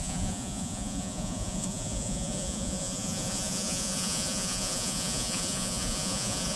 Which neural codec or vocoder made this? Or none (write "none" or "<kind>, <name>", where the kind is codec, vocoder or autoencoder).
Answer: vocoder, Vocos